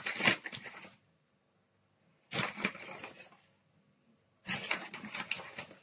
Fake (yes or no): no